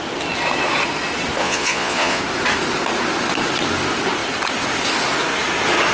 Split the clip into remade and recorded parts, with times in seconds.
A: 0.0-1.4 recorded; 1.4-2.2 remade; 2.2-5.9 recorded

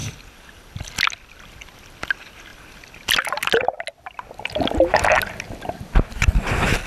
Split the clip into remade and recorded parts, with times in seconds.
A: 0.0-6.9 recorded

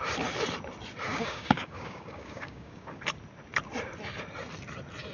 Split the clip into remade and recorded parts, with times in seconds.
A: 0.0-1.1 recorded; 1.1-3.0 remade; 3.0-5.1 recorded

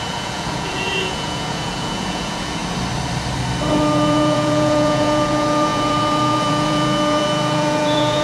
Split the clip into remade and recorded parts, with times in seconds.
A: 0.0-2.6 remade; 2.6-3.8 recorded; 3.8-8.2 remade

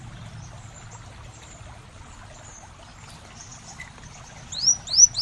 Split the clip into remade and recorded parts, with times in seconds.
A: 0.0-5.2 recorded

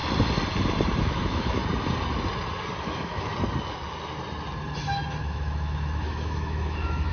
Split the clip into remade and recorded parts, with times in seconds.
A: 0.0-1.0 recorded; 1.0-1.6 remade; 1.6-2.8 recorded; 2.8-3.3 remade; 3.3-5.2 recorded; 5.2-7.1 remade